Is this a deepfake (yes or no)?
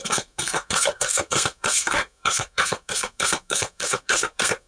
yes